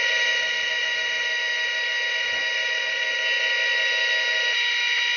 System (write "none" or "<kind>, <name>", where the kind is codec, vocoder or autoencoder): none